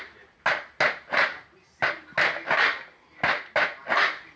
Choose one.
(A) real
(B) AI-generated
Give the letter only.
A